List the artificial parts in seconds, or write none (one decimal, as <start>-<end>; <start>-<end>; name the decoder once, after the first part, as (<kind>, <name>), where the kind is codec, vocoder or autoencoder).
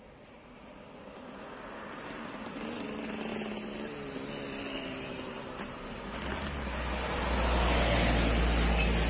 none